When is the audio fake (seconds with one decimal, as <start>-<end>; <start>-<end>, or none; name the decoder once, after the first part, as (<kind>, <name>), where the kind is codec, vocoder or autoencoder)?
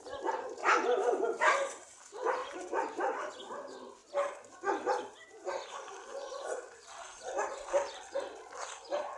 0.6-2.0 (vocoder, BigVGAN v2); 4.0-7.8